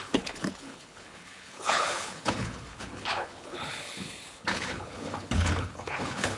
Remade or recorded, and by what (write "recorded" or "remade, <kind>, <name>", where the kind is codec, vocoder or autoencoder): remade, codec, HILCodec